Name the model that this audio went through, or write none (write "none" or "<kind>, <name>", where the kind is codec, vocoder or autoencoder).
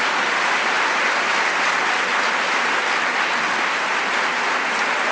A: none